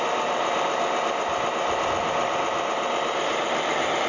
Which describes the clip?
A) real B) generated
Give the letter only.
A